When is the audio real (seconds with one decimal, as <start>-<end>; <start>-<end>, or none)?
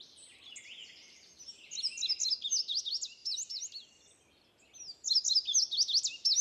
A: 0.0-6.4